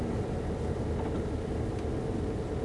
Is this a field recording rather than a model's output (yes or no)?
yes